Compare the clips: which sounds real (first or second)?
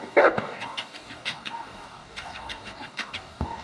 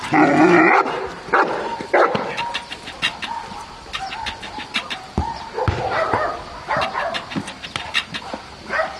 second